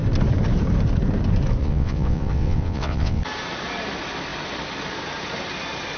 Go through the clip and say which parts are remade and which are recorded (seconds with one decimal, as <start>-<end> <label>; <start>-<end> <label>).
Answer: 0.0-1.6 recorded; 1.6-3.2 remade; 3.2-6.0 recorded